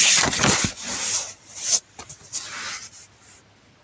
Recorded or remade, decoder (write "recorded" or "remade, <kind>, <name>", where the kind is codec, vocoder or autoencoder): recorded